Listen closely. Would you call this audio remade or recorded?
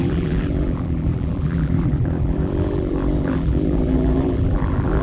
remade